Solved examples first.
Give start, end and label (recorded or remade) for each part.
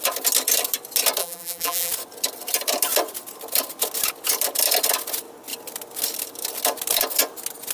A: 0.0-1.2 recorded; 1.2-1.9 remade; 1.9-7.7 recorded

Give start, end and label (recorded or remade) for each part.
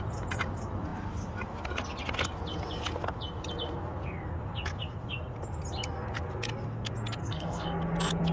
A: 0.0-7.2 recorded; 7.2-7.8 remade; 7.8-8.3 recorded